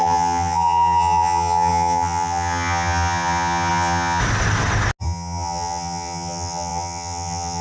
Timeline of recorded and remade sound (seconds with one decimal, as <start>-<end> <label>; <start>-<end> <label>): 0.0-4.2 remade; 4.2-5.0 recorded; 5.0-7.6 remade